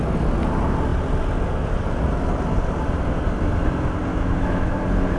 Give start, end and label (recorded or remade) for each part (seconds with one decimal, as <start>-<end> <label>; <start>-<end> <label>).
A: 0.0-4.1 recorded; 4.1-4.8 remade; 4.8-5.2 recorded